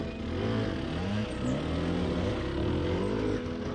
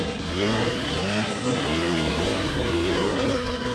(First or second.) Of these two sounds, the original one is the first